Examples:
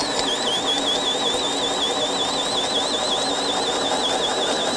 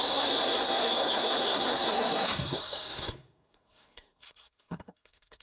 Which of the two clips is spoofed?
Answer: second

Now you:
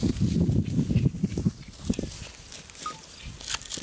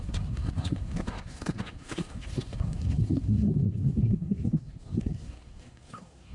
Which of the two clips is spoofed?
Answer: second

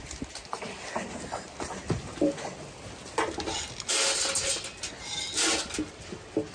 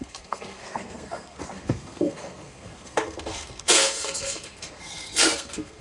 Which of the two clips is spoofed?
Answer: second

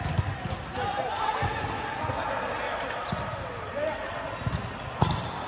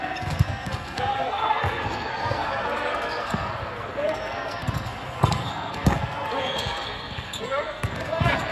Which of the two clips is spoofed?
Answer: second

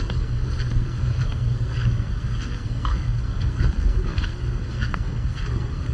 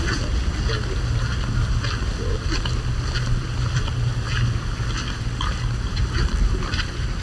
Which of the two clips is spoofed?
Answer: first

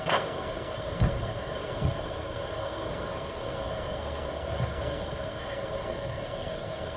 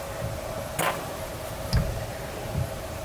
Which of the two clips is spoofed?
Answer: first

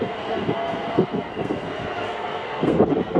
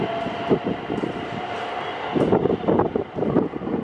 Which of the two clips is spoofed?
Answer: first